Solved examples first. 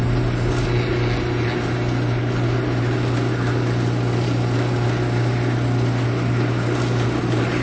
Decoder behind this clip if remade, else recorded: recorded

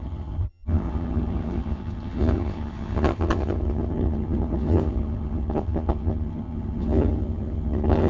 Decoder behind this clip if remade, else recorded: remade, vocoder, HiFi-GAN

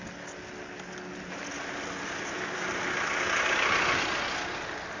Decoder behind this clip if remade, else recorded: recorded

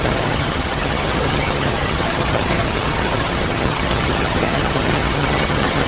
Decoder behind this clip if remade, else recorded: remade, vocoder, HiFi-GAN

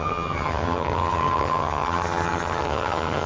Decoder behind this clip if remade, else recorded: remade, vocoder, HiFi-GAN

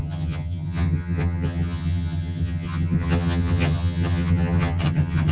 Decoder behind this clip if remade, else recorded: remade, vocoder, HiFi-GAN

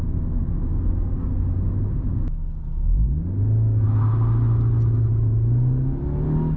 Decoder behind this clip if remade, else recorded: recorded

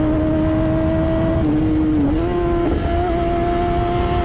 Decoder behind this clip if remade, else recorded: recorded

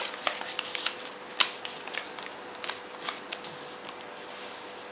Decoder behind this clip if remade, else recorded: recorded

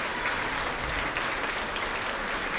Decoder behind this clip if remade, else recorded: recorded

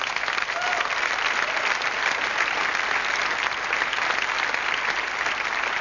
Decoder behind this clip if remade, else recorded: recorded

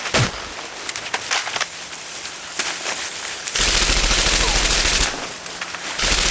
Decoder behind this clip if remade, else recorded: recorded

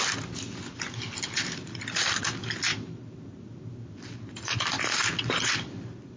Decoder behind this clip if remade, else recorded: recorded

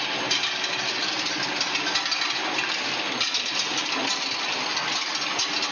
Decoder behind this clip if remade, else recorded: recorded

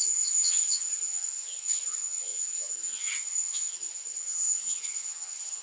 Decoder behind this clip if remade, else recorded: remade, vocoder, HiFi-GAN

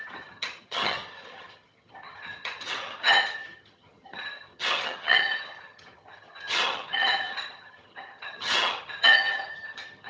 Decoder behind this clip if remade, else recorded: remade, vocoder, HiFi-GAN